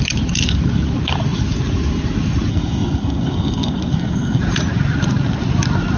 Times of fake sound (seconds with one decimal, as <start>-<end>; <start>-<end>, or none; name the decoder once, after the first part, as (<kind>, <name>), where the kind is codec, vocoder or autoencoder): 2.5-4.4 (codec, SNAC)